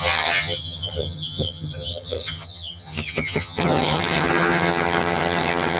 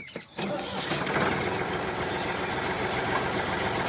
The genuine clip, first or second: second